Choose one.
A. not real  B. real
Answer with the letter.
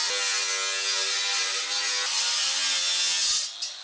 B